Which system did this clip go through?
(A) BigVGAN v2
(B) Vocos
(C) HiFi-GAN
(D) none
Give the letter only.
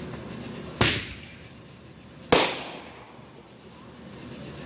D